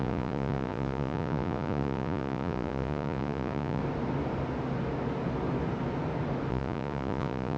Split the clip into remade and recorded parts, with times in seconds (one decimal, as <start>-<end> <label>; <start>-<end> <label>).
0.0-3.8 remade; 3.8-6.5 recorded; 6.5-7.6 remade